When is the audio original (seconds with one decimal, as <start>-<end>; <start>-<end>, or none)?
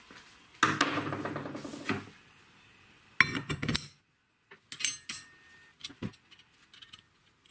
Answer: 0.0-7.5